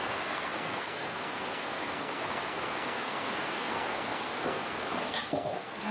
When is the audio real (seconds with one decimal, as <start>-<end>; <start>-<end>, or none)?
none